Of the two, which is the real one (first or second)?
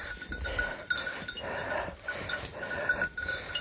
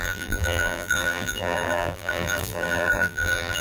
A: first